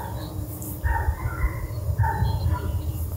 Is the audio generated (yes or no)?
no